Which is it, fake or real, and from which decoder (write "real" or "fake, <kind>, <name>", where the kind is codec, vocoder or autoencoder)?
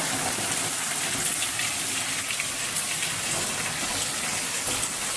real